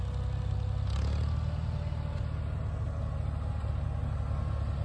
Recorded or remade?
recorded